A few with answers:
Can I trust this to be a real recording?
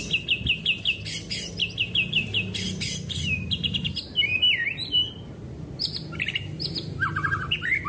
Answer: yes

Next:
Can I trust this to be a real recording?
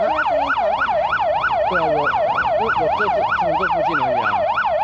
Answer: yes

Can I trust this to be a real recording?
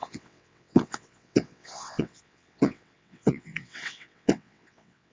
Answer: no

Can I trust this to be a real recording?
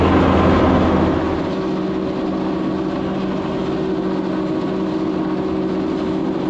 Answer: yes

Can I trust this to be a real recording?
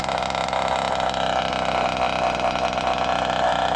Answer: yes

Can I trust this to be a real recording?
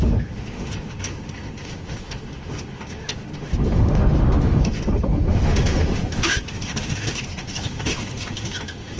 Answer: no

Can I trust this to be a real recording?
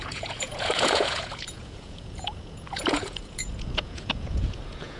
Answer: no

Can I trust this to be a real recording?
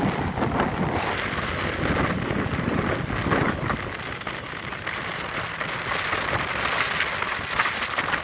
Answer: yes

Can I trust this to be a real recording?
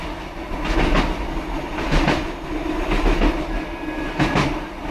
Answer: yes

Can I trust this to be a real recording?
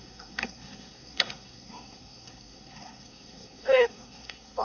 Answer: no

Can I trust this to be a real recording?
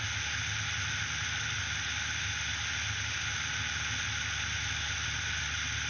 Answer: yes